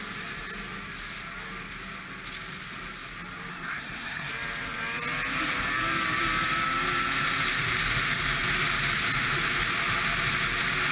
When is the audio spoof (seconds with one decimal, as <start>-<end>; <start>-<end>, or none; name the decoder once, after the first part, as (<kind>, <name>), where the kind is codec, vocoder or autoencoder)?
3.5-4.3 (codec, SNAC)